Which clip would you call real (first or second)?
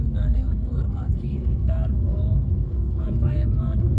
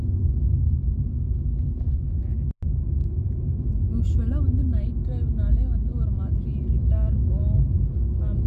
second